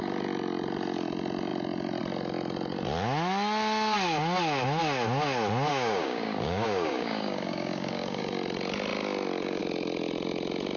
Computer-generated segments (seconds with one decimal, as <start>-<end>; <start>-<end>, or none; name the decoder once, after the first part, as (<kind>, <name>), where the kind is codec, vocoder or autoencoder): 5.7-8.2 (codec, DAC)